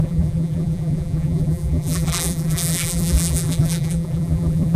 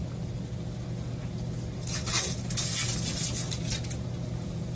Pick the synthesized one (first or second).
first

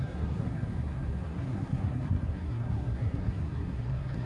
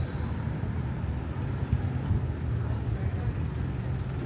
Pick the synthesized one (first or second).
first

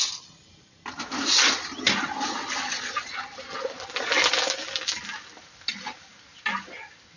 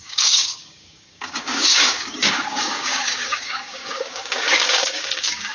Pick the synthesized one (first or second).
second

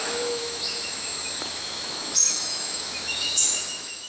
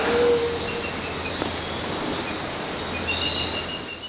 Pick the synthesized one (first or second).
first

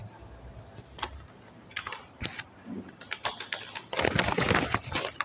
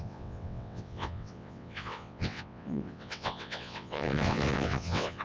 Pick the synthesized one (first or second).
second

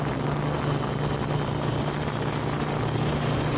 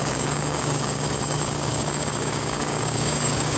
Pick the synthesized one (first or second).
second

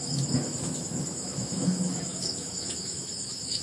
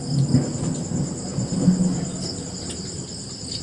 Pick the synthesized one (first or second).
first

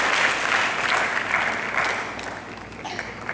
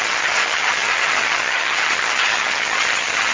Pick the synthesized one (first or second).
second